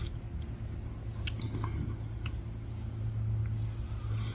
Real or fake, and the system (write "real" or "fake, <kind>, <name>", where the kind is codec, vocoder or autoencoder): real